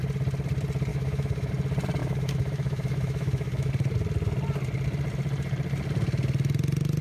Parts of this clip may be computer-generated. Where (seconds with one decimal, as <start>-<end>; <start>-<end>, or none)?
0.9-1.5; 2.0-3.7